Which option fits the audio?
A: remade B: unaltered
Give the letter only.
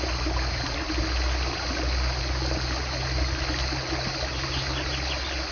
B